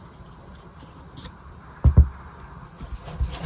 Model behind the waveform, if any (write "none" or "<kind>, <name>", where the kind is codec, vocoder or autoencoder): none